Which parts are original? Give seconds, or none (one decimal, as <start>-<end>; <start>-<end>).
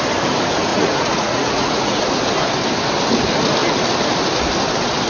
0.0-0.7; 2.0-5.1